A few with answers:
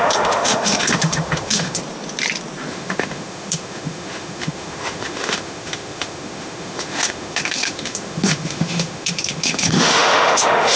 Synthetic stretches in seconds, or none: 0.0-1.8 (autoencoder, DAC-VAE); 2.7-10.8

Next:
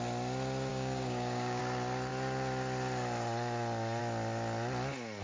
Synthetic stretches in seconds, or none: 0.7-1.6 (codec, DAC)

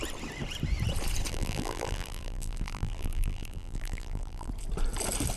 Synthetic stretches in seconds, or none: 1.3-4.5 (vocoder, BigVGAN v2)